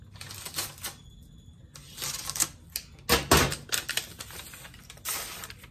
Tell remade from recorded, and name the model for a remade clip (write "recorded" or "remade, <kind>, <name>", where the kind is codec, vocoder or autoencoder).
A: recorded